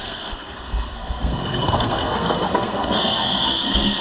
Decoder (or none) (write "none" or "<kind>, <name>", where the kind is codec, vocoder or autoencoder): codec, SNAC